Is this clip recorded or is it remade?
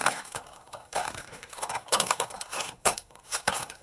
remade